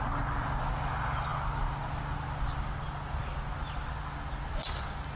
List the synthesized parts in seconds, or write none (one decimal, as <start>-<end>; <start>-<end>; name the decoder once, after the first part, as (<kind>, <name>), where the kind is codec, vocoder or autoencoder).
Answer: none